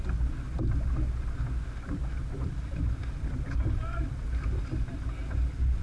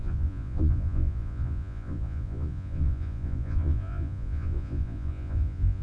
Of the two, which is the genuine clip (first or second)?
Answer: first